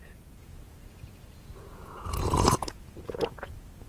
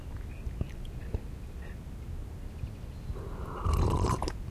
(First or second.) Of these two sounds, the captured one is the second